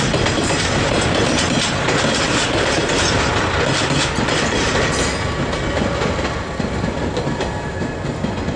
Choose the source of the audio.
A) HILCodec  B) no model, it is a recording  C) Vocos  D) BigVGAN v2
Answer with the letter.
B